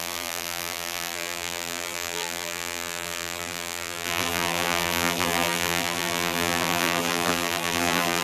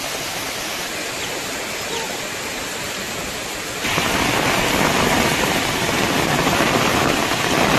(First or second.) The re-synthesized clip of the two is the first